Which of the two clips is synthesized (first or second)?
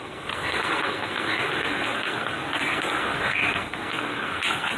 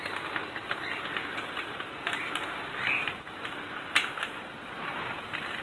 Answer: first